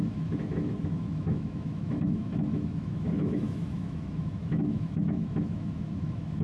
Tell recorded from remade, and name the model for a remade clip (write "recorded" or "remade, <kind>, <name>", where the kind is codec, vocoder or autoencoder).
remade, autoencoder, DAC-VAE